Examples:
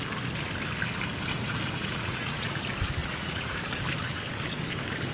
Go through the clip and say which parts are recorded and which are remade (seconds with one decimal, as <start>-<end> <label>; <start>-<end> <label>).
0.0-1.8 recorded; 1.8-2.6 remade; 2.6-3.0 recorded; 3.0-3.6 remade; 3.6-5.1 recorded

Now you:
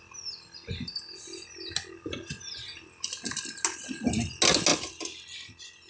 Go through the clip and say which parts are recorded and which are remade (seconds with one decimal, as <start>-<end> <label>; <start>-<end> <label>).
0.0-5.9 recorded

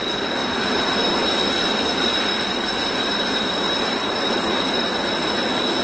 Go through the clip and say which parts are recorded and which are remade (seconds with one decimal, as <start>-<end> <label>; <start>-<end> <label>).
0.0-0.4 recorded; 0.4-1.4 remade; 1.4-2.1 recorded; 2.1-4.4 remade; 4.4-5.8 recorded

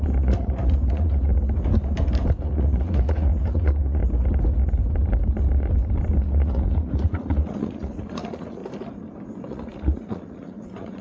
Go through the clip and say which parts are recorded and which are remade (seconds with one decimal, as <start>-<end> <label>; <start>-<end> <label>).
0.0-1.3 remade; 1.3-2.4 recorded; 2.4-4.0 remade; 4.0-6.2 recorded; 6.2-8.6 remade; 8.6-9.5 recorded; 9.5-11.0 remade

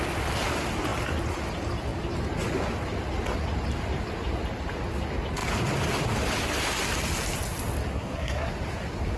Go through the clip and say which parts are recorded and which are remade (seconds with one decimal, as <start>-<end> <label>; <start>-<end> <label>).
0.0-7.9 recorded; 7.9-8.5 remade; 8.5-9.2 recorded

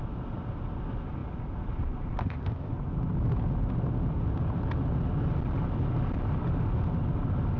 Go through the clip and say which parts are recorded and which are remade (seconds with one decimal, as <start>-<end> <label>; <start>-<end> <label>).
0.0-2.2 recorded; 2.2-2.7 remade; 2.7-7.6 recorded

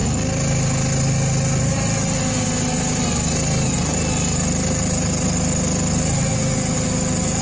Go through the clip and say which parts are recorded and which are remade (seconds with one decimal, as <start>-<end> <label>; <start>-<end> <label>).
0.0-7.4 recorded

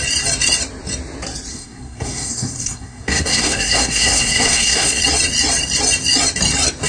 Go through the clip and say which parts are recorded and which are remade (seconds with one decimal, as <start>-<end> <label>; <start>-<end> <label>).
0.0-1.5 recorded; 1.5-5.0 remade; 5.0-6.9 recorded